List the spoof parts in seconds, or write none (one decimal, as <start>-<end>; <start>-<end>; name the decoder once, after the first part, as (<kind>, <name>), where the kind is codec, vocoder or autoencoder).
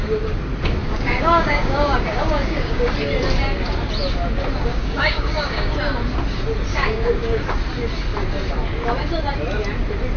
0.8-2.9 (codec, DAC); 4.7-5.8; 6.7-7.4